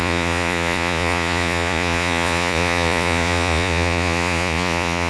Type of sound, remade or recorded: remade